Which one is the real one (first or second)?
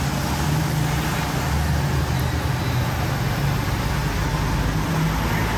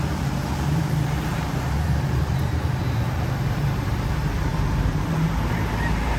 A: first